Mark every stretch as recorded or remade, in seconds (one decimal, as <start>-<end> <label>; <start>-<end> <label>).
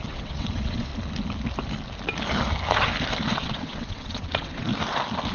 0.0-0.9 remade; 0.9-3.3 recorded; 3.3-4.7 remade; 4.7-5.3 recorded